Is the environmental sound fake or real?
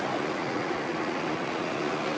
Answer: fake